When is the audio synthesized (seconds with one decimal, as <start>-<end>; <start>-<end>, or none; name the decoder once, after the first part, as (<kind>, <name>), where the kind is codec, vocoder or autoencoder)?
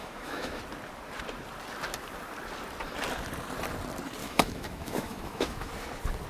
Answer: 0.0-0.6 (autoencoder, DAC-VAE); 4.2-5.7